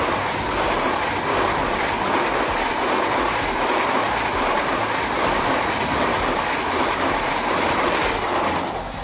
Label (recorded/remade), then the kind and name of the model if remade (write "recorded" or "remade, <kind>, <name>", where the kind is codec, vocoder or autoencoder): recorded